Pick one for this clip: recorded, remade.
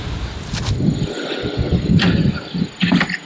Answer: recorded